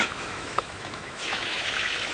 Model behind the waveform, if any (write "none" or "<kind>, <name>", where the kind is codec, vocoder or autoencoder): autoencoder, DAC-VAE